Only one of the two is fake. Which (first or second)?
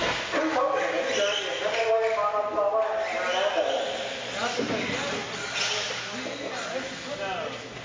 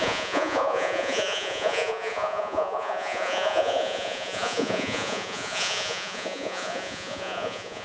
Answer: second